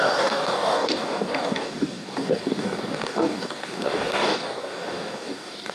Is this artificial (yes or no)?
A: yes